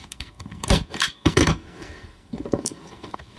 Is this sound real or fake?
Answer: fake